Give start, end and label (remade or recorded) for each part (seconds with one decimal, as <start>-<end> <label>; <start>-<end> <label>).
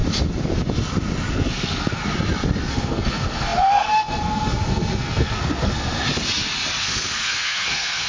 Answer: 0.0-1.3 recorded; 1.3-2.0 remade; 2.0-2.7 recorded; 2.7-6.0 remade; 6.0-6.8 recorded; 6.8-8.1 remade